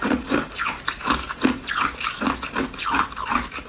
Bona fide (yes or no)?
yes